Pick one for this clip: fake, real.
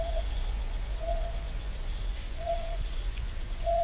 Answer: fake